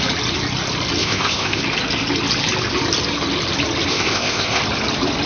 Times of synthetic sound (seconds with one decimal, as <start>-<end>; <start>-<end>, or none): 1.0-1.6; 3.9-4.6